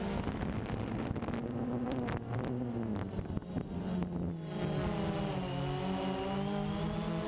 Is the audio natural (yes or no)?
yes